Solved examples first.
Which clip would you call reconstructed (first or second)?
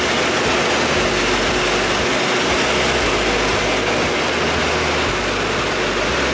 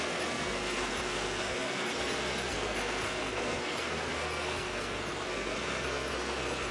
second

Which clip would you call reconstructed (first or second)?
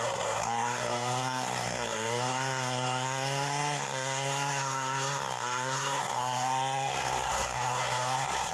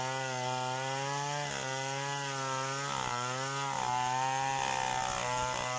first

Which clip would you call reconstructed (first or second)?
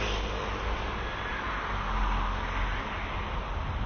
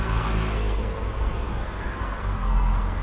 second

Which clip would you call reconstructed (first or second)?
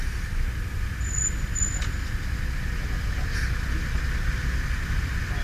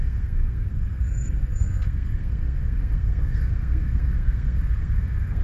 second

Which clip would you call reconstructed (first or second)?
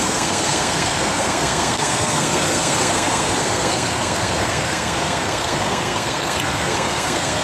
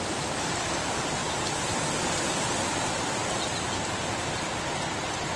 first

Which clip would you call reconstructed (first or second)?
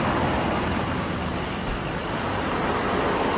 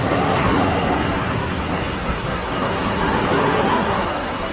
second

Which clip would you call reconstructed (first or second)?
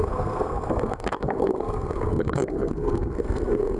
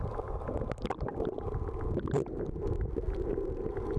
first